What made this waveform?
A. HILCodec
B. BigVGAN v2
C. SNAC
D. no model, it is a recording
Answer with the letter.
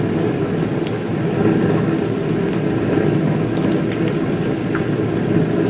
D